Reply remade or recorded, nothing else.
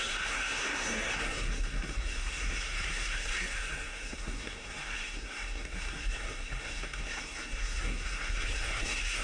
remade